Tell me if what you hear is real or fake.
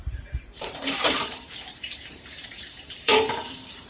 fake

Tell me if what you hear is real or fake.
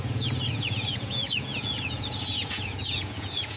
fake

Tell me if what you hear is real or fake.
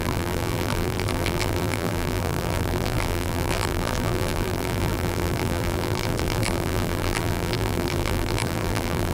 fake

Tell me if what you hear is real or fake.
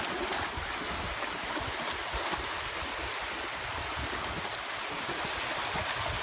real